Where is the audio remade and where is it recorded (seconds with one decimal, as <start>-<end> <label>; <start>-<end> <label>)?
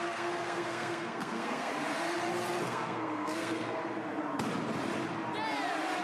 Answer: 0.0-1.7 remade; 1.7-2.6 recorded; 2.6-3.8 remade; 3.8-6.0 recorded